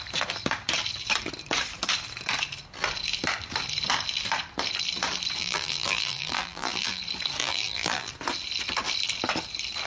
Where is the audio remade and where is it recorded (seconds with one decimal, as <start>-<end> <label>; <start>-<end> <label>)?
0.0-5.4 recorded; 5.4-7.0 remade; 7.0-7.4 recorded; 7.4-8.1 remade; 8.1-9.9 recorded